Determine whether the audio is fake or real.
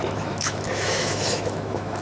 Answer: fake